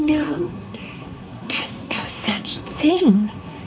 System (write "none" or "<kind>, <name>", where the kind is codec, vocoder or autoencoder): codec, SNAC